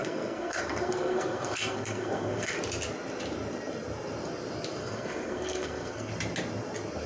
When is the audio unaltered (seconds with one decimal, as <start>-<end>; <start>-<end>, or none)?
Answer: 2.6-4.8; 6.1-7.1